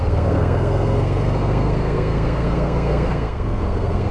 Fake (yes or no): yes